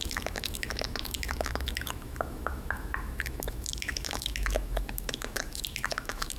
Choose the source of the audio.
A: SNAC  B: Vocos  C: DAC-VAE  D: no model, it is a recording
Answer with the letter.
C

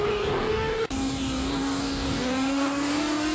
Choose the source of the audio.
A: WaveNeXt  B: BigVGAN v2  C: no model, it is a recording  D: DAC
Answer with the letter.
D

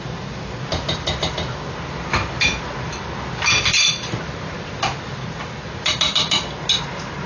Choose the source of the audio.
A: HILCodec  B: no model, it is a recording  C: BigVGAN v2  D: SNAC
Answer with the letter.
B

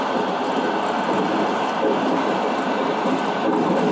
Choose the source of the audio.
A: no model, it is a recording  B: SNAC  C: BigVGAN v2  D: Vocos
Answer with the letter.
A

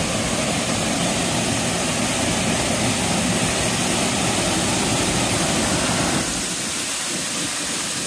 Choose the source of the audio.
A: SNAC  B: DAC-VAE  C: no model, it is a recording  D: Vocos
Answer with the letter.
C